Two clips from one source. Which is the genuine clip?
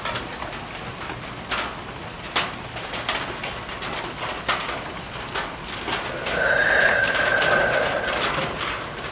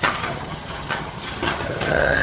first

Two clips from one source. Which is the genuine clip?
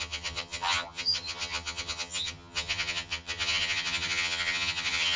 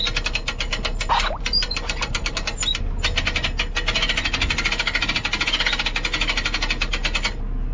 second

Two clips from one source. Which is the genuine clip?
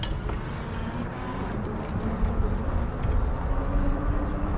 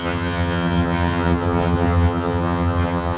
first